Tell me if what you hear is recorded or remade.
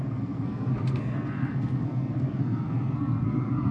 remade